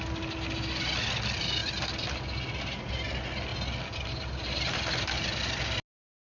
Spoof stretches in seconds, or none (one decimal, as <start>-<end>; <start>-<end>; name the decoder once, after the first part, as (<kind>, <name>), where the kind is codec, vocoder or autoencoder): none